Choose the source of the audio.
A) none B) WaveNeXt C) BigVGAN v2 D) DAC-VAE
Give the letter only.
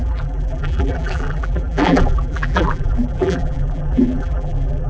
C